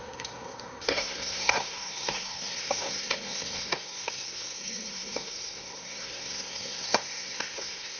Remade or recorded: remade